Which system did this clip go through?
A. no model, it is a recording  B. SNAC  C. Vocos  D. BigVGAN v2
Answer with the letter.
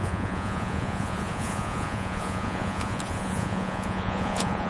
C